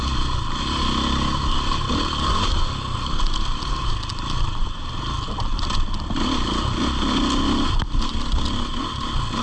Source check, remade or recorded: recorded